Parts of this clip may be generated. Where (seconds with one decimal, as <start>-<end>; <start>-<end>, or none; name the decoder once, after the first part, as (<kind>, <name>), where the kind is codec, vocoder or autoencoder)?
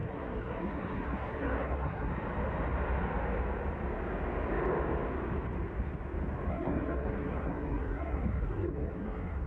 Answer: 0.0-2.1 (codec, SNAC); 6.5-9.5